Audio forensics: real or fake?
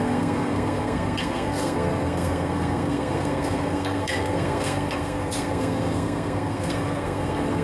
fake